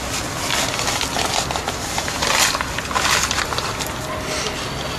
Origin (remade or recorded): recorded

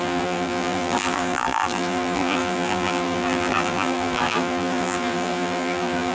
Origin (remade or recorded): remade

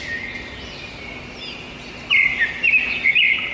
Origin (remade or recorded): recorded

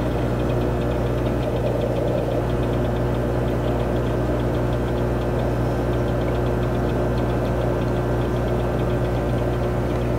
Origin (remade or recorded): recorded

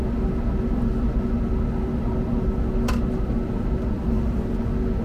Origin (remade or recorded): recorded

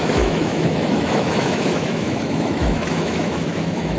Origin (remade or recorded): remade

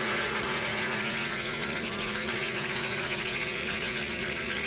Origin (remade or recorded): remade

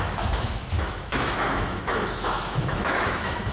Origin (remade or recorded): remade